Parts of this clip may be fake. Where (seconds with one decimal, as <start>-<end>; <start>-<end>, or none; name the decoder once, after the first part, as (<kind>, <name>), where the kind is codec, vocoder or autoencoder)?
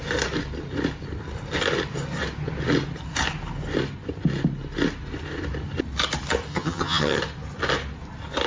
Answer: 6.5-7.2 (vocoder, HiFi-GAN)